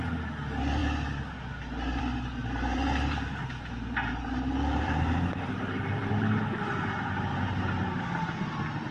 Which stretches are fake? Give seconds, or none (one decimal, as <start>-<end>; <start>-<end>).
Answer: 2.4-6.1